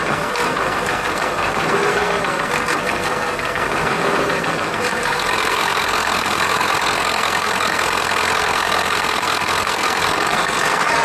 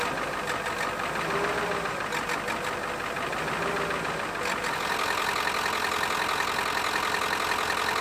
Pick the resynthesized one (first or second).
first